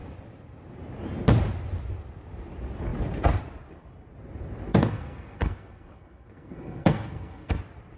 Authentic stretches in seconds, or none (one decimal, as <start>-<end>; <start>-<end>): 0.0-4.7; 7.6-8.0